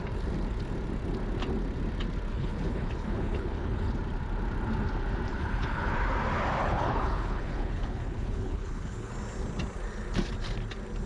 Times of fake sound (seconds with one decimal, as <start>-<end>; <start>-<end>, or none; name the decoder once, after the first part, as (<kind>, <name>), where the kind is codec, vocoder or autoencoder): 2.3-3.9 (codec, HILCodec); 5.3-5.9; 6.6-9.1